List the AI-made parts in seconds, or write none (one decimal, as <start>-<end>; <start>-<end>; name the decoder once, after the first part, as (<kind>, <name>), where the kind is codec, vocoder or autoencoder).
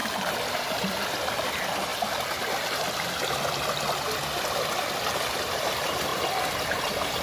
1.5-1.9 (vocoder, BigVGAN v2); 5.4-6.1; 6.8-7.2